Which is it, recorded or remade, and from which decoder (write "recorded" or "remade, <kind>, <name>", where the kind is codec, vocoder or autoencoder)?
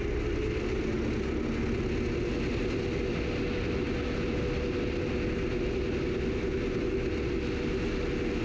recorded